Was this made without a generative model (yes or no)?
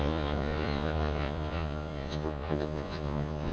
no